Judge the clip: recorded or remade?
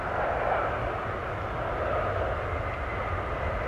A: recorded